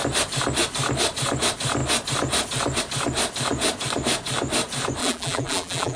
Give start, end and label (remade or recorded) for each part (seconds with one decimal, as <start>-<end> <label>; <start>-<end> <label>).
0.0-5.0 recorded; 5.0-6.0 remade